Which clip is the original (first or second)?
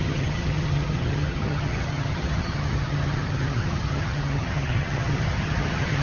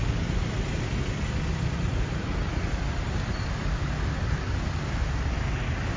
second